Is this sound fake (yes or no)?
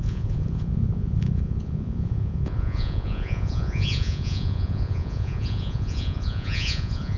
yes